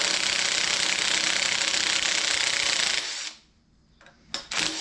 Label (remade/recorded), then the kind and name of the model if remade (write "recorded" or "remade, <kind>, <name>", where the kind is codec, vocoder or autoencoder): recorded